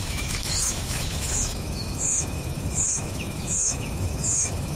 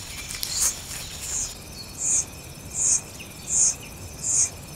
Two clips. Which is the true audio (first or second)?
second